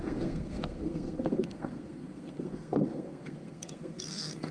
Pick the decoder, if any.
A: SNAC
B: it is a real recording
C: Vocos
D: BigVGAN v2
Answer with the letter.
A